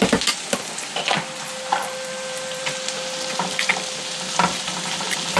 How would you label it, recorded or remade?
remade